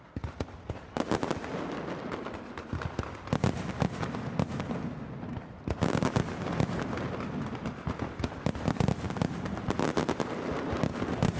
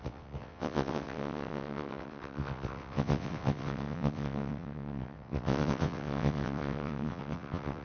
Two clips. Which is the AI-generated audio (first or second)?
second